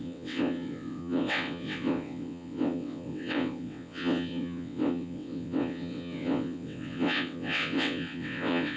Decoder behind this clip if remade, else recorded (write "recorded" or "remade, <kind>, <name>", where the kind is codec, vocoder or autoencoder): remade, vocoder, WaveNeXt